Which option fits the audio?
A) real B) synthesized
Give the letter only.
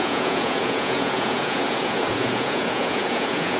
B